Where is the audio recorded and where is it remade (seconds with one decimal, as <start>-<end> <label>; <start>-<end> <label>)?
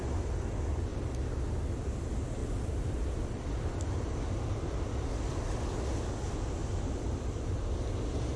0.0-6.6 recorded; 6.6-7.6 remade; 7.6-8.4 recorded